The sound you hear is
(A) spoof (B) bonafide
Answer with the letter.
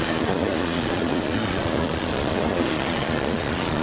A